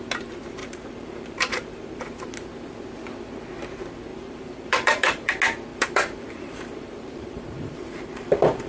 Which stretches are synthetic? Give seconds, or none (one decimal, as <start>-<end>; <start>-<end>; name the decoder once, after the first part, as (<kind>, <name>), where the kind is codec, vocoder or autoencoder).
0.6-2.0 (vocoder, BigVGAN v2); 4.1-5.3; 5.7-8.7